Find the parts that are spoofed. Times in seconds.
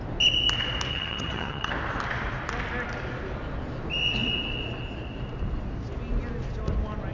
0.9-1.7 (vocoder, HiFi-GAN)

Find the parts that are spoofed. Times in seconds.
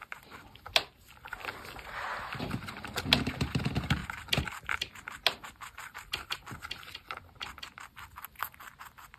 none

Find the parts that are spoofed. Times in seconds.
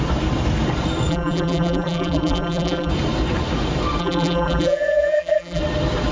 1.1-2.9 (vocoder, BigVGAN v2); 4.0-5.6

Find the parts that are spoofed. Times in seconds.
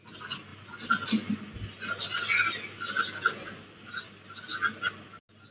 none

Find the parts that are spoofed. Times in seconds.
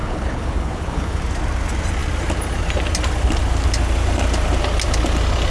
0.0-1.2 (codec, HILCodec)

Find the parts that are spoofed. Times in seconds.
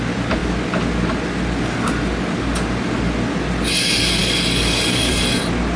4.2-5.1 (codec, DAC)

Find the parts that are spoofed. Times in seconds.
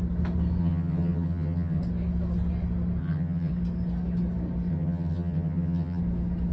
0.6-1.8 (vocoder, HiFi-GAN); 3.0-3.5; 4.7-6.0